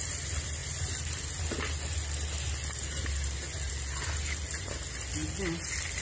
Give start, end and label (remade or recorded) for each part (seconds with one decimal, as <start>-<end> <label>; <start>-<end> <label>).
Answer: 0.0-6.0 recorded